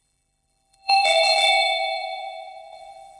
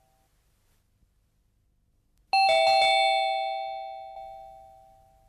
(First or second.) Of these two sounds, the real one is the second